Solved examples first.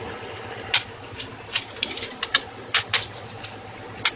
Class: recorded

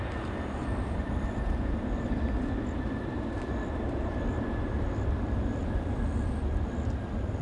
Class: remade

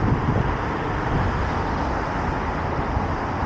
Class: recorded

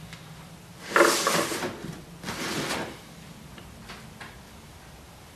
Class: recorded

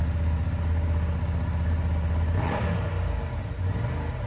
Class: recorded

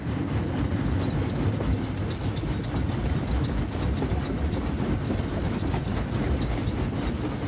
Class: recorded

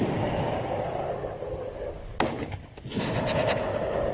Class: recorded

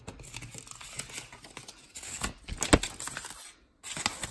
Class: recorded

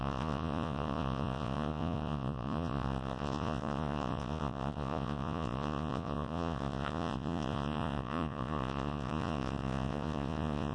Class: remade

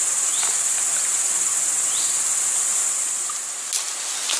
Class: recorded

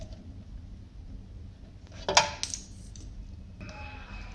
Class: recorded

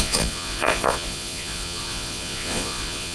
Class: remade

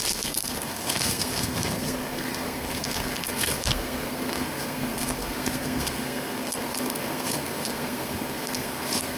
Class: remade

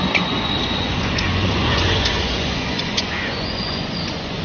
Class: remade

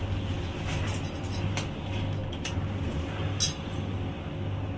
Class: recorded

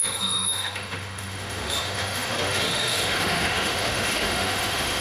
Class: remade